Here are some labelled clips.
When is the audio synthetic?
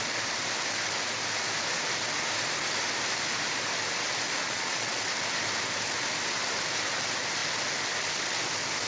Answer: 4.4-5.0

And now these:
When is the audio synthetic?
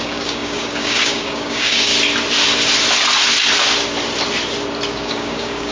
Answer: 0.0-1.9; 4.9-5.7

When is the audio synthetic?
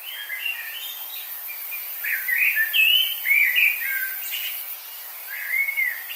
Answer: 1.6-3.8